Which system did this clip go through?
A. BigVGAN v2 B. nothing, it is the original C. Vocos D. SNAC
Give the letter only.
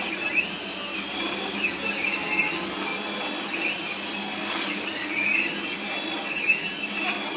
B